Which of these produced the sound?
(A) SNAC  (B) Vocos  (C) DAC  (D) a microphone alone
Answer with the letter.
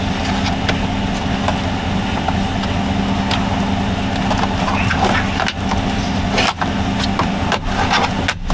D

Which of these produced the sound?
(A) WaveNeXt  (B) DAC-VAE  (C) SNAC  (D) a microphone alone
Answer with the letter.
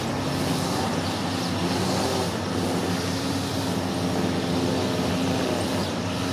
D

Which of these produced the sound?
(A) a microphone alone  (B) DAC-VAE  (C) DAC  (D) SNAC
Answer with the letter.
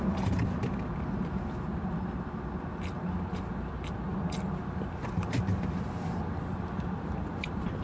A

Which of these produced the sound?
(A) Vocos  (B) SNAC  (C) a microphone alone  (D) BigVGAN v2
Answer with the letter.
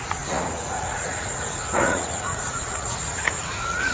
A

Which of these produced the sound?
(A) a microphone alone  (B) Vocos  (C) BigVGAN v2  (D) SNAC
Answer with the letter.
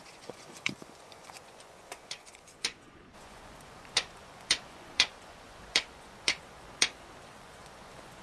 B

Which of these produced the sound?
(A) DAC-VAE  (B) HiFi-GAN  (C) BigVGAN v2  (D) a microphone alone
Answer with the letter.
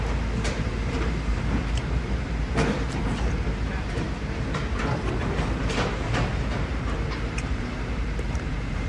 C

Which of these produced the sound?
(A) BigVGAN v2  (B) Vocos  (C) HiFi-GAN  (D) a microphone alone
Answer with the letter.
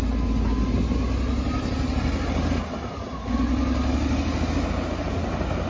D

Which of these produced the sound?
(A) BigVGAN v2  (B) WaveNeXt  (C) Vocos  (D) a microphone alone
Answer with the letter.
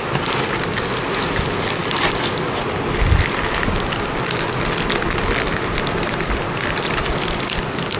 D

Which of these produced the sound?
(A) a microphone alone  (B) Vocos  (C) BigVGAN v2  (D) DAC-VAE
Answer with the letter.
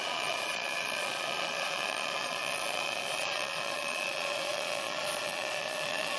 B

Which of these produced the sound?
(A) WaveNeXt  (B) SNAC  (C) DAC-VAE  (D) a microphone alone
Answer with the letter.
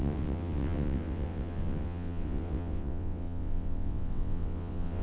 A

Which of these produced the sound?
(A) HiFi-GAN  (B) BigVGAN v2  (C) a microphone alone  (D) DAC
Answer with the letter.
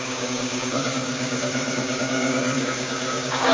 D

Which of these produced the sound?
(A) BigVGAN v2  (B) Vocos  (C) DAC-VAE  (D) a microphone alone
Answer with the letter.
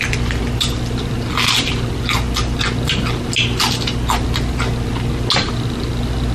D